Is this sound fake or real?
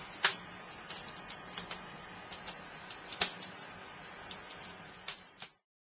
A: real